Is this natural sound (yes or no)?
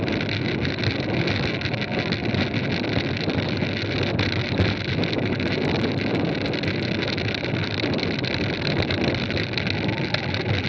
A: yes